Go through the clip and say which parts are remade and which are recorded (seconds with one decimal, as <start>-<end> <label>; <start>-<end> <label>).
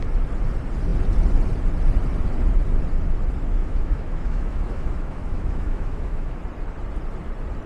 0.0-3.6 recorded; 3.6-6.4 remade; 6.4-7.7 recorded